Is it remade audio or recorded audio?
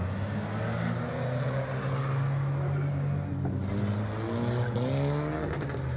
recorded